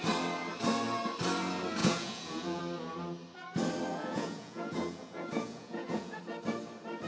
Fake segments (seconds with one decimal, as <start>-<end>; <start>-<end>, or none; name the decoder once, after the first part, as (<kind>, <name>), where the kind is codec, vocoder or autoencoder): 1.8-2.6 (vocoder, Vocos); 3.9-6.2